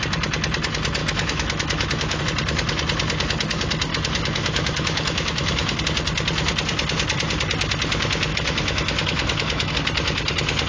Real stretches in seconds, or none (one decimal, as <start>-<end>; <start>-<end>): 0.0-1.0; 2.2-3.9; 5.8-8.3; 9.7-10.7